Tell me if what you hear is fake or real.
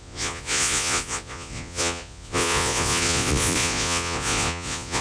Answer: fake